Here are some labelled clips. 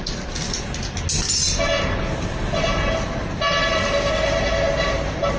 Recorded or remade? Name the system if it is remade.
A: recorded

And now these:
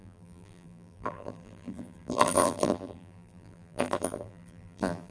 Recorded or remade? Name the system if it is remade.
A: remade, vocoder, BigVGAN v2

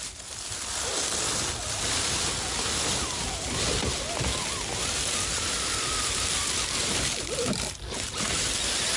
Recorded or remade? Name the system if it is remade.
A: recorded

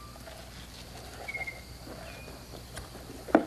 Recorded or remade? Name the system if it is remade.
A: recorded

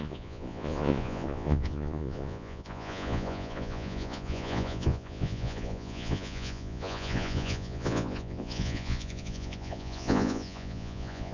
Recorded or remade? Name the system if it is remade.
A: remade, vocoder, Vocos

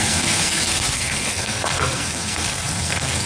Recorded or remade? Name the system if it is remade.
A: remade, codec, SNAC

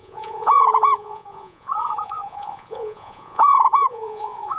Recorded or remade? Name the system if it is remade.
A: remade, vocoder, Vocos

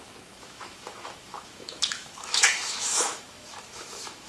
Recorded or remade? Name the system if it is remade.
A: remade, autoencoder, DAC-VAE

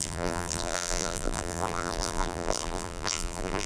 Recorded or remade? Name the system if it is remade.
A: remade, vocoder, BigVGAN v2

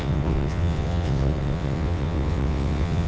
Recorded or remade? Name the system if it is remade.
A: remade, vocoder, WaveNeXt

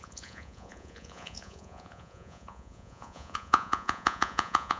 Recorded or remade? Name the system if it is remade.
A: remade, vocoder, Vocos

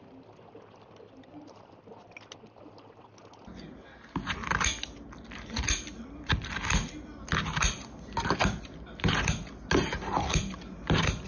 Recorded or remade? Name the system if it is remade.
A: recorded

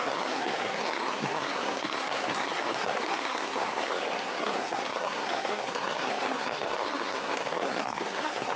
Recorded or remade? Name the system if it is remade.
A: remade, codec, SNAC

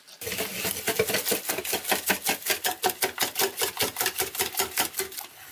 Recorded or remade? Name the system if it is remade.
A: recorded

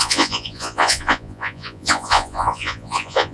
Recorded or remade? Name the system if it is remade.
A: remade, vocoder, Vocos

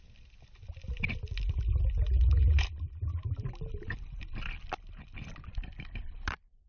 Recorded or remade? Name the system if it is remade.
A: remade, vocoder, BigVGAN v2